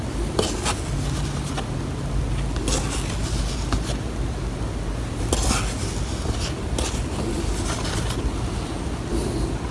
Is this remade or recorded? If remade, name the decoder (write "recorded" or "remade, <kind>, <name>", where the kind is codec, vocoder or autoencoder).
recorded